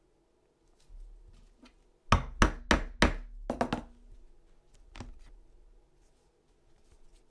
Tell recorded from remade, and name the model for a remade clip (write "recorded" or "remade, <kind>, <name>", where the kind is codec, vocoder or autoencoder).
recorded